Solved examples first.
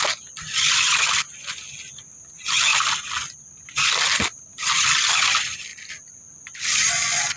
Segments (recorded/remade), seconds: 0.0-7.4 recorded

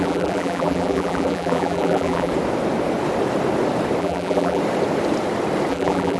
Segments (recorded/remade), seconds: 0.0-2.3 remade; 2.3-4.0 recorded; 4.0-4.6 remade; 4.6-5.7 recorded; 5.7-6.2 remade

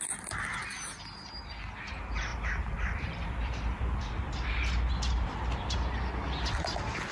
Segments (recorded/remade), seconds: 0.0-2.3 recorded; 2.3-4.1 remade; 4.1-7.1 recorded